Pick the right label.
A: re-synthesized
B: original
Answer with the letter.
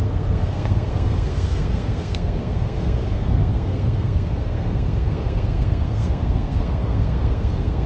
A